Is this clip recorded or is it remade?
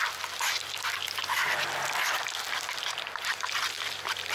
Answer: recorded